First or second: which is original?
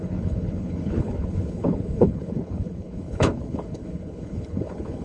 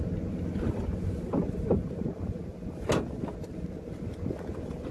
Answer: second